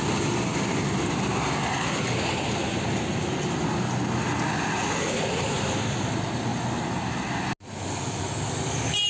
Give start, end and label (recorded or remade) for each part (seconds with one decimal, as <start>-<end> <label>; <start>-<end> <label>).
0.0-9.1 recorded